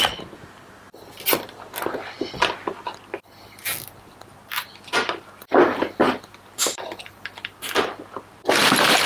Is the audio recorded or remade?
recorded